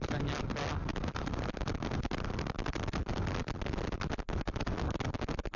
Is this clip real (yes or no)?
yes